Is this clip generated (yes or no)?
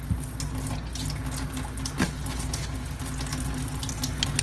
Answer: no